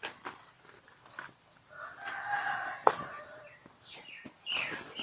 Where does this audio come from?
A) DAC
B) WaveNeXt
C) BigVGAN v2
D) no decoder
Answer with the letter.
D